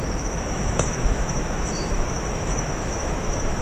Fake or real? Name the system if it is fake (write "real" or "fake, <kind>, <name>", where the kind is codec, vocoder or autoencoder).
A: fake, autoencoder, DAC-VAE